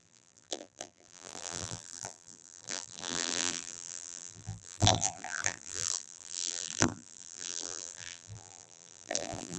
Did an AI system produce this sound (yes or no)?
yes